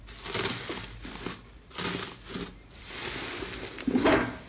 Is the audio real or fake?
real